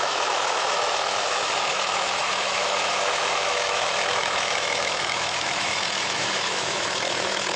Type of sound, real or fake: fake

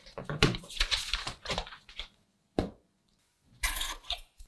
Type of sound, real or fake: fake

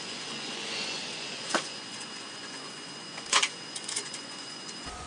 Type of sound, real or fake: fake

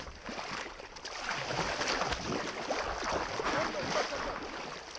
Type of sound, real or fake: real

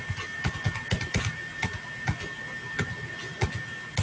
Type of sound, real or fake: real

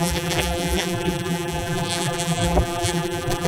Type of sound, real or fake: fake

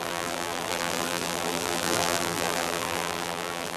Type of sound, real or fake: fake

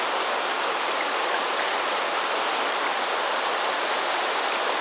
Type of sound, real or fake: real